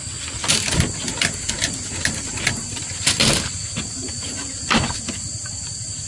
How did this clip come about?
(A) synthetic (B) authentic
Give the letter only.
B